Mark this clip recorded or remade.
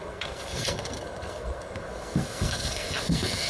remade